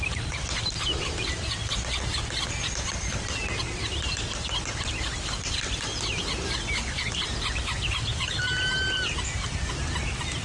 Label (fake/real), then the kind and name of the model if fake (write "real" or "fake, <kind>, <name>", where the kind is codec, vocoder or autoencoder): real